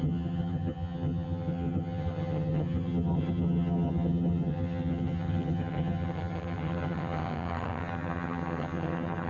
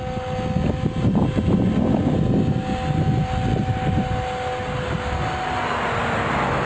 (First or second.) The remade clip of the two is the first